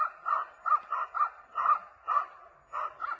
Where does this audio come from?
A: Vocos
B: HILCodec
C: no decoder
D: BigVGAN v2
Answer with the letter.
C